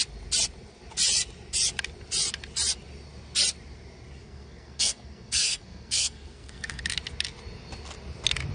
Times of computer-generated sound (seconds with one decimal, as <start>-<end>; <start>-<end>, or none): 4.2-6.8